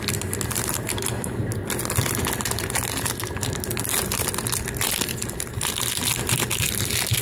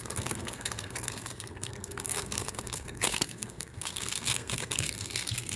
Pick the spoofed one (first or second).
second